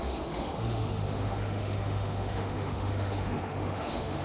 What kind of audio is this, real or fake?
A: fake